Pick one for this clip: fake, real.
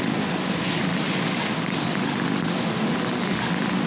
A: real